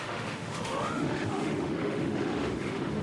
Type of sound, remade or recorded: remade